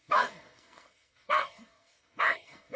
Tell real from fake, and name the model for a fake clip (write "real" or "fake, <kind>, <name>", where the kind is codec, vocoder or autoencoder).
fake, codec, SNAC